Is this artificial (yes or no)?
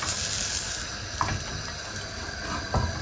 no